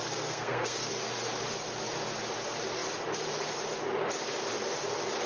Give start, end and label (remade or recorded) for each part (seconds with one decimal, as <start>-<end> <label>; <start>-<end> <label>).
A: 0.0-0.9 remade; 0.9-5.3 recorded